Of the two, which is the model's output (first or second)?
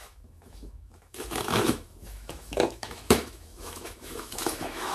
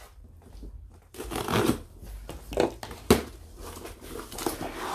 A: first